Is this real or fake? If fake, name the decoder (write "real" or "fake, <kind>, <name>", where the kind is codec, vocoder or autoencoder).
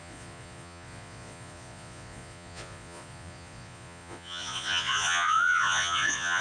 fake, vocoder, Vocos